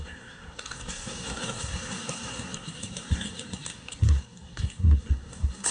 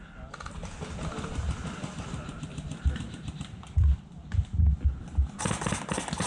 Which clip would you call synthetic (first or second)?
first